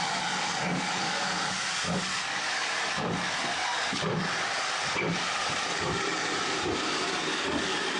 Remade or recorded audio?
remade